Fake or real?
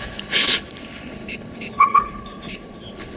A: fake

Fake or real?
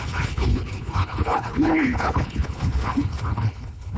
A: fake